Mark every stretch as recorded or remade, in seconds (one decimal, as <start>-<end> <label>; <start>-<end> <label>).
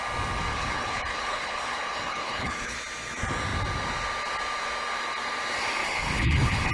0.0-0.5 recorded; 0.5-2.8 remade; 2.8-5.8 recorded; 5.8-6.7 remade